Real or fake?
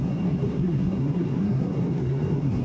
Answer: fake